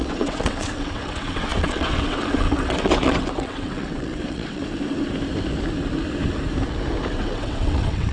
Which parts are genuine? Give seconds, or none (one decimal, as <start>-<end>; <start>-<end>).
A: 4.6-7.1